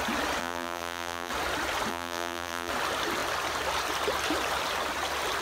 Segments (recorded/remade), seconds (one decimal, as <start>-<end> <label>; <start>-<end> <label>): 0.0-0.4 recorded; 0.4-1.3 remade; 1.3-1.9 recorded; 1.9-2.7 remade; 2.7-5.4 recorded